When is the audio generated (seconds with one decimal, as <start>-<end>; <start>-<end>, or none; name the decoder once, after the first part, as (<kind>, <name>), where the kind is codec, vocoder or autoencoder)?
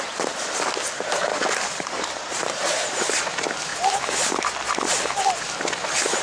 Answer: 1.3-3.2 (vocoder, BigVGAN v2)